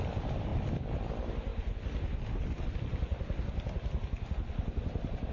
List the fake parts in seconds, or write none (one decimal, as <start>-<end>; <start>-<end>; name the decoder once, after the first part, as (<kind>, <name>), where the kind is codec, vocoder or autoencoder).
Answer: 0.5-1.0 (vocoder, BigVGAN v2)